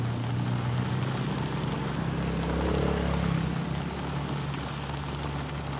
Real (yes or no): yes